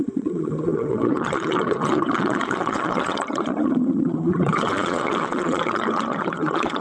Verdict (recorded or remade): remade